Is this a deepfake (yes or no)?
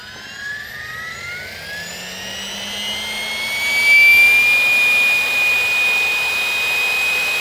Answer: no